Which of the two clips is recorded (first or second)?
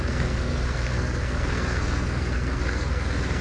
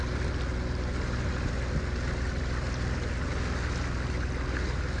second